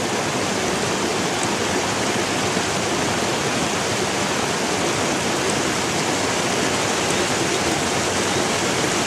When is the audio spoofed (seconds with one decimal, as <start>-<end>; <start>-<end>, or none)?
none